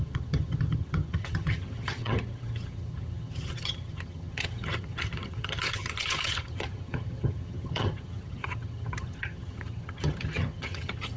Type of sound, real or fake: fake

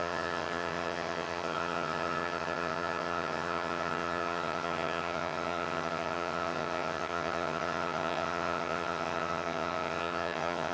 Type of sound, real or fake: fake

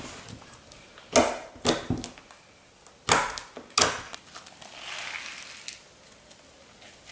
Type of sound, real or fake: real